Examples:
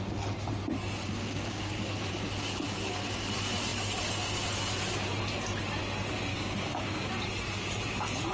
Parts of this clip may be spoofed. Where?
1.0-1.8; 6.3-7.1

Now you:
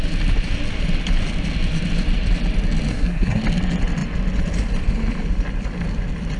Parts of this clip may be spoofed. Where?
2.9-3.4